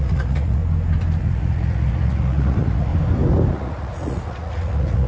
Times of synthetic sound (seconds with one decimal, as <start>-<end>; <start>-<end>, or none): 0.0-0.6; 1.2-2.9; 3.5-5.1